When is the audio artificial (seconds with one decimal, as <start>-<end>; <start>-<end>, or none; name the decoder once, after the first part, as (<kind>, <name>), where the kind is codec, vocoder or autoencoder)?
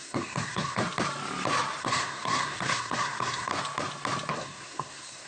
0.0-0.8 (codec, SNAC); 1.8-3.5; 4.3-5.3